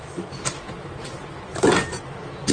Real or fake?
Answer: real